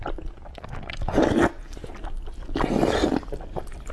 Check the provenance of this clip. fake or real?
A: real